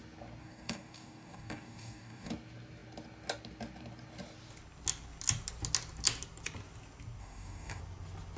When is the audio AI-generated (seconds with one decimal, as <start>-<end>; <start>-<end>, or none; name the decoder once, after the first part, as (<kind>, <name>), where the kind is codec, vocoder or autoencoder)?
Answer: 0.4-2.3 (codec, DAC); 7.2-7.8